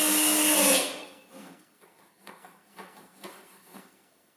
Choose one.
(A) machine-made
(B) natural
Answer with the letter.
A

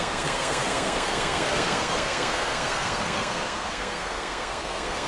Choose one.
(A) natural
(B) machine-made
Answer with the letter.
B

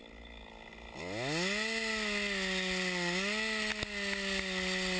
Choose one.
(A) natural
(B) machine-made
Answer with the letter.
A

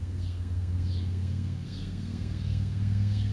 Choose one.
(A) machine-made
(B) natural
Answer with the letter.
A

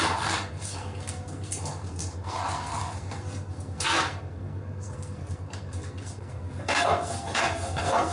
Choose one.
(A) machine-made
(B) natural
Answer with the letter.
A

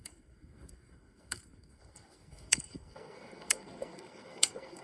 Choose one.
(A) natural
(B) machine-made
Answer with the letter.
B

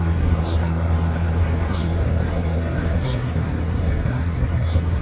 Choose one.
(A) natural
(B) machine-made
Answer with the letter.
B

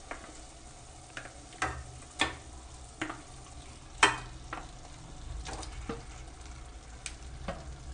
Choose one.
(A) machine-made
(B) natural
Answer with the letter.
B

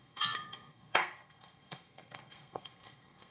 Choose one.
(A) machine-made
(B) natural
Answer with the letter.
A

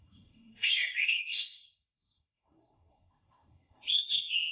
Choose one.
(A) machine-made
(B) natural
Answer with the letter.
A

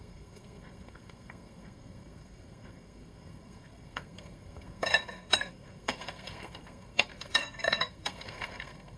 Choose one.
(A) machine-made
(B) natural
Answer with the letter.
A